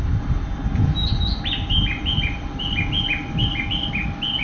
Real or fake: real